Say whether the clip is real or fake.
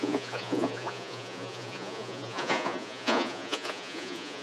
fake